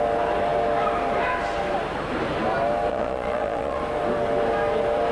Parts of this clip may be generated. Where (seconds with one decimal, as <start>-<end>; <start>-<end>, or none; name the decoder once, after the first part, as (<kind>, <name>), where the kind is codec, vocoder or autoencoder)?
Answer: 2.9-3.8 (vocoder, Vocos)